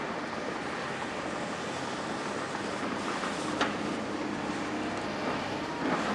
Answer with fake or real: real